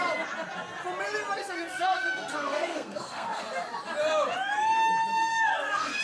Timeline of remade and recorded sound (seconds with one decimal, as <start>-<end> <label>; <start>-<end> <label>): 0.0-1.4 recorded; 1.4-3.4 remade; 3.4-5.1 recorded; 5.1-6.0 remade